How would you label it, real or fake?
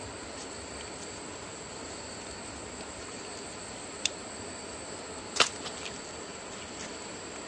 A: real